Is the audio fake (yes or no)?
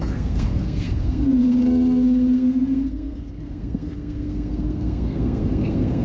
yes